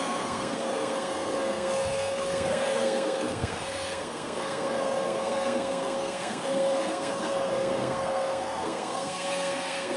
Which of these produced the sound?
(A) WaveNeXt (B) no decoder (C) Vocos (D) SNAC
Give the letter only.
D